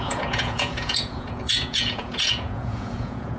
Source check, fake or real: fake